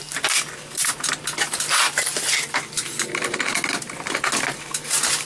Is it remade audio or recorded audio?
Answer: recorded